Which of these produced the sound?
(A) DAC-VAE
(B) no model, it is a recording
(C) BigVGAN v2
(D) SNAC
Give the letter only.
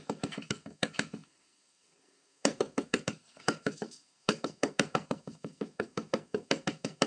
D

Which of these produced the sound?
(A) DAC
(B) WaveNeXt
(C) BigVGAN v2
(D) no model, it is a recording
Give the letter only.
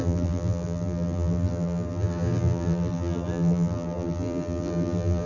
C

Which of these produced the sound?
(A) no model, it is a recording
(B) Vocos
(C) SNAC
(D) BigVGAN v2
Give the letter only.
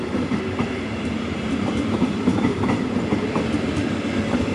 D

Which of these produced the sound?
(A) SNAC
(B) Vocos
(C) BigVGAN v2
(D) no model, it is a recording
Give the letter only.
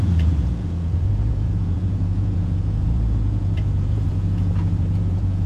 B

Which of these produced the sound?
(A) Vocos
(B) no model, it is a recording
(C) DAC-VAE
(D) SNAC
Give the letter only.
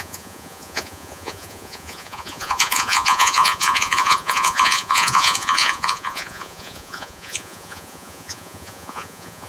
A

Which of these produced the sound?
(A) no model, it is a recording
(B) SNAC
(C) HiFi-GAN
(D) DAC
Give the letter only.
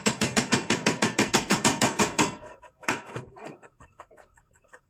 B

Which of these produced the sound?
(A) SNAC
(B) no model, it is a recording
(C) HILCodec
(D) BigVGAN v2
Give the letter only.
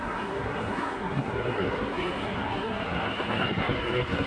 A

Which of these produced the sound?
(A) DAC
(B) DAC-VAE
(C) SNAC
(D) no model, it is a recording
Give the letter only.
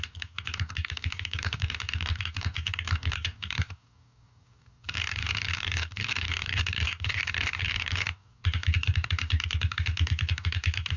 A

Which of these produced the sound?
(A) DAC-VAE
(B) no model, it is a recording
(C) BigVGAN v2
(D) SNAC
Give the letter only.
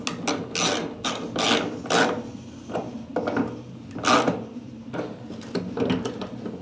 B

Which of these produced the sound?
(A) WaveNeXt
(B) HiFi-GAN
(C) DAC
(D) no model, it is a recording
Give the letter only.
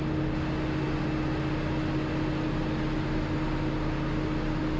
D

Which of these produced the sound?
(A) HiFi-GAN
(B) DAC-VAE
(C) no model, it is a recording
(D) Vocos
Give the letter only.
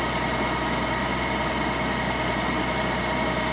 C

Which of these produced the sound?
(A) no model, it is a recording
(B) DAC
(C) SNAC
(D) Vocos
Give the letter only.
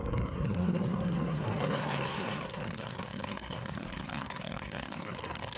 C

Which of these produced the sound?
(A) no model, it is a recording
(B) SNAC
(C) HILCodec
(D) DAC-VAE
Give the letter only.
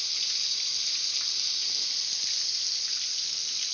A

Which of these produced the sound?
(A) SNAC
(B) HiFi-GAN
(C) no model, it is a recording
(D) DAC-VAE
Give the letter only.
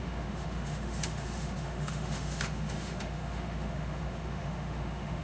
D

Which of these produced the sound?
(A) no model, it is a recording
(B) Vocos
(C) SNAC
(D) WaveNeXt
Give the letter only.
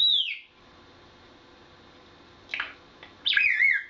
A